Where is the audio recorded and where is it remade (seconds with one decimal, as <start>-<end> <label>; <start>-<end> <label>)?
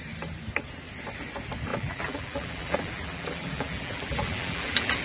0.0-1.7 recorded; 1.7-5.0 remade